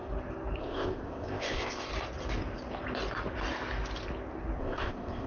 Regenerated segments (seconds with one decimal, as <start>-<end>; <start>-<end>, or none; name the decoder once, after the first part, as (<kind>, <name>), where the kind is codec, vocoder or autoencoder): 0.6-1.9 (codec, ZipCodec); 4.6-5.3